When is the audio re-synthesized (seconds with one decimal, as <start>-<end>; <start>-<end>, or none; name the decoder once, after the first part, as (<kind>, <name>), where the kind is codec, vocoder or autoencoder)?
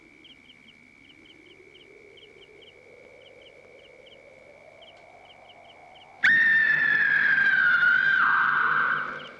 none